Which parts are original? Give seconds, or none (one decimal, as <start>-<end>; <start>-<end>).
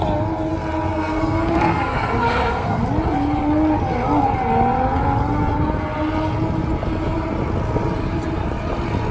0.0-0.9; 2.8-9.1